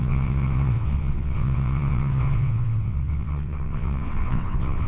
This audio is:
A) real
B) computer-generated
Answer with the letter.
B